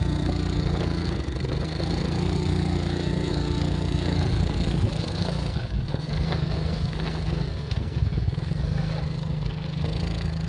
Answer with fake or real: fake